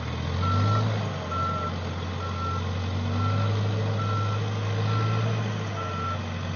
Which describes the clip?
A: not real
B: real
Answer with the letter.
B